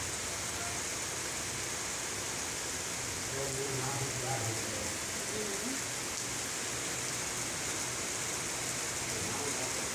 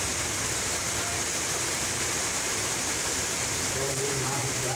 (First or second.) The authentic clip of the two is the first